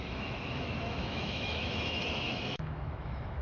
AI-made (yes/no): yes